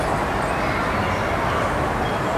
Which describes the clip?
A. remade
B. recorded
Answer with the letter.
B